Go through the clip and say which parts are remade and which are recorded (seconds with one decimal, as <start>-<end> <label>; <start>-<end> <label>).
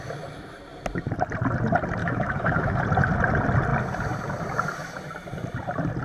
0.0-2.0 recorded; 2.0-2.8 remade; 2.8-6.0 recorded